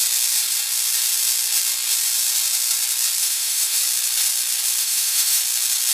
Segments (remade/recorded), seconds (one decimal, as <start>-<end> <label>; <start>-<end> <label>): 0.0-3.2 recorded; 3.2-3.8 remade; 3.8-4.8 recorded; 4.8-5.4 remade; 5.4-5.9 recorded